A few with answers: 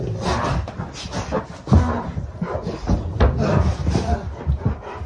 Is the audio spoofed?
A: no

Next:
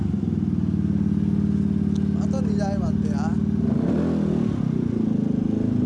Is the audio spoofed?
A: no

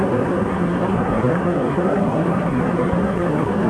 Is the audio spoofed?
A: yes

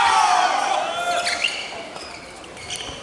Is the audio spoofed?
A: no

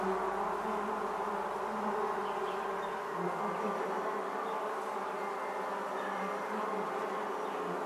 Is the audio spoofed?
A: no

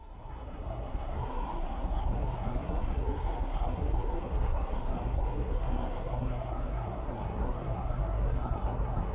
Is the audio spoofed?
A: yes